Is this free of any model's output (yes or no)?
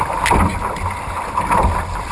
yes